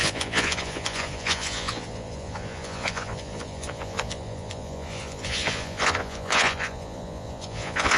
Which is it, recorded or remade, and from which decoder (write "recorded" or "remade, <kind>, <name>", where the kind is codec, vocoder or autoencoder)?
remade, vocoder, Vocos